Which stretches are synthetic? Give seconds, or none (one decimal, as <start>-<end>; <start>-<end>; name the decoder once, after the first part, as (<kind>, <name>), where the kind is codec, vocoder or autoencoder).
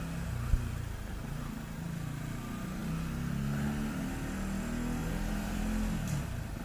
0.5-2.4 (vocoder, BigVGAN v2); 5.0-5.6